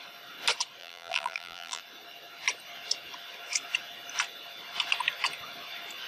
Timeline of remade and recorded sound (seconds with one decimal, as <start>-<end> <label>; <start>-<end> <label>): 0.0-0.8 recorded; 0.8-1.8 remade; 1.8-6.1 recorded